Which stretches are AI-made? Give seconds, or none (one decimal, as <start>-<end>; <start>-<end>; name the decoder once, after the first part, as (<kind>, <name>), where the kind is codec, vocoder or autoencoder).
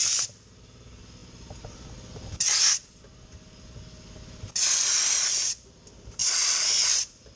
none